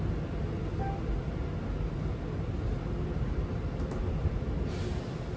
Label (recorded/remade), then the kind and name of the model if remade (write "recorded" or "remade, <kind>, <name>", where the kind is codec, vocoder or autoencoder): recorded